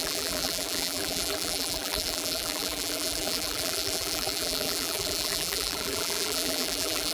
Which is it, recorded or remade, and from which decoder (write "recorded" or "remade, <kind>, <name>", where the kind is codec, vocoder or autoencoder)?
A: remade, vocoder, BigVGAN v2